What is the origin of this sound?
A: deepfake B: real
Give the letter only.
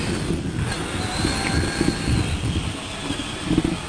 B